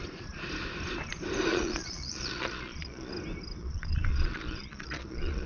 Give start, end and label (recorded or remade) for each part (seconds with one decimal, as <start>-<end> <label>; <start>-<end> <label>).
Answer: 0.0-1.5 recorded; 1.5-3.1 remade; 3.1-3.6 recorded; 3.6-5.5 remade